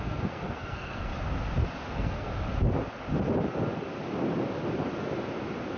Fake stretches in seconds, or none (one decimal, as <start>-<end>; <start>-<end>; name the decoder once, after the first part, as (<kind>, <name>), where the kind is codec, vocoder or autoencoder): 0.0-1.1 (codec, SNAC); 1.9-2.3